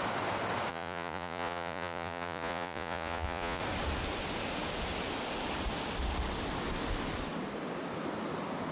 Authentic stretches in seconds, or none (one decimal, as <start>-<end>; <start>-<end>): 0.0-0.7; 3.6-8.7